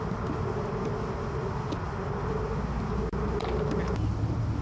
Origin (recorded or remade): recorded